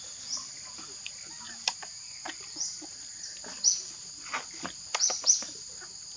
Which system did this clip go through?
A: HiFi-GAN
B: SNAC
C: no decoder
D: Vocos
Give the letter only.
C